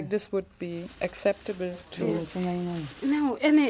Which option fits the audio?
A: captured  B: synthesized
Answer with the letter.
A